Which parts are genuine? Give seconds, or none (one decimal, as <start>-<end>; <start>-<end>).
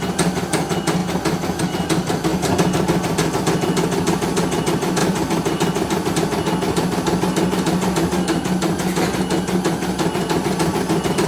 0.0-5.0; 6.1-11.3